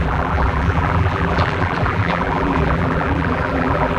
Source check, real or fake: fake